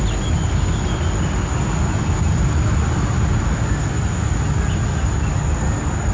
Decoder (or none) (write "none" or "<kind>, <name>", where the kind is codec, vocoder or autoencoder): none